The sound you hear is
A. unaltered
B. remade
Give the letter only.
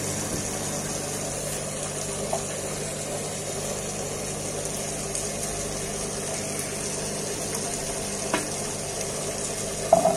A